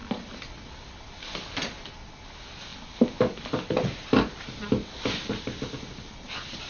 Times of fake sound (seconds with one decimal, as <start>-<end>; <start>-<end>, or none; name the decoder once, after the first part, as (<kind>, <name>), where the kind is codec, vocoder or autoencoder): none

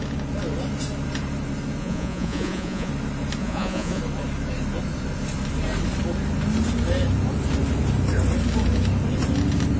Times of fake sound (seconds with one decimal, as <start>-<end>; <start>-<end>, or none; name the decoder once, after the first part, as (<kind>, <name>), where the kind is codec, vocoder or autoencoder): 1.8-2.9 (vocoder, Vocos); 3.4-4.0

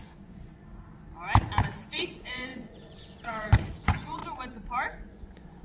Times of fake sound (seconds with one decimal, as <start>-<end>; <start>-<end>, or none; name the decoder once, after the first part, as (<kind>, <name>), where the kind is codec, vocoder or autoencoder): 0.0-0.6 (vocoder, Vocos); 1.8-4.2; 4.9-5.6

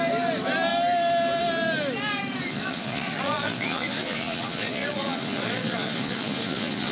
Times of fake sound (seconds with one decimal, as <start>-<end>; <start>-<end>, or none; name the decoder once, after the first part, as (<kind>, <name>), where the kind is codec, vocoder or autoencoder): 2.5-6.9 (vocoder, Vocos)

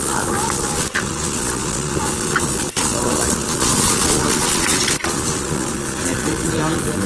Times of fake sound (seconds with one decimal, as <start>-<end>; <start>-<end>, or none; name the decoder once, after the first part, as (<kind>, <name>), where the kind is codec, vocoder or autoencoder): 0.0-7.1 (vocoder, Vocos)